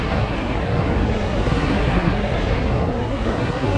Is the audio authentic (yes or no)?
no